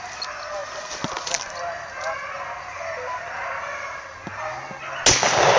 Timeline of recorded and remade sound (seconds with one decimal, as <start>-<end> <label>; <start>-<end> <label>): 0.0-5.6 recorded